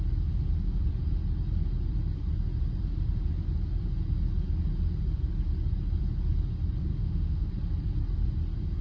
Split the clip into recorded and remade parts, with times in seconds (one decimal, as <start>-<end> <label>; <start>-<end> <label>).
0.0-6.9 recorded; 6.9-7.5 remade; 7.5-8.8 recorded